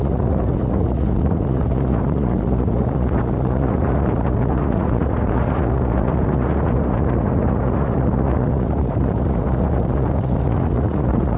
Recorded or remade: remade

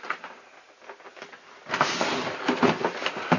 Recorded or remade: recorded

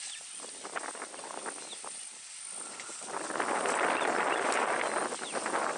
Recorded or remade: recorded